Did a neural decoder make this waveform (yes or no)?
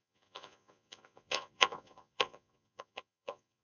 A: yes